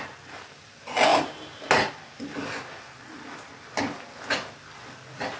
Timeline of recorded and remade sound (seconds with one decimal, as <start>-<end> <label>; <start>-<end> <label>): 0.0-5.4 recorded